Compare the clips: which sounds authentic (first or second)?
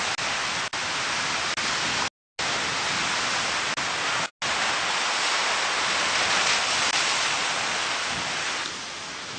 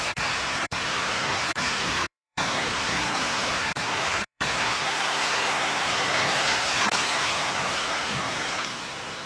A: first